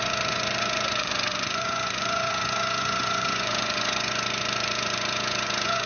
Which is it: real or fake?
fake